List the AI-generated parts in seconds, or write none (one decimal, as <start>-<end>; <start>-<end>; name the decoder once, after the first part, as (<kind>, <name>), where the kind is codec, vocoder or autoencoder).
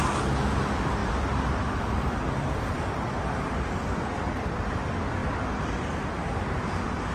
none